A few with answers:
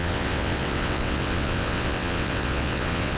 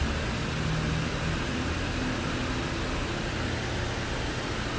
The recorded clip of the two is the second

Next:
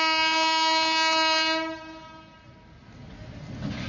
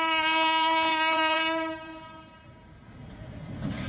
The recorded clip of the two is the first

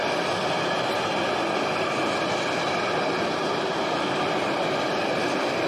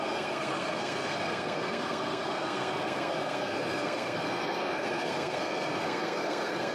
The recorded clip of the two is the first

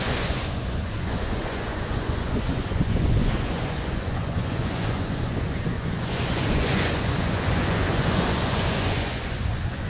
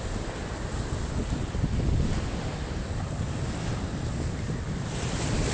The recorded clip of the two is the second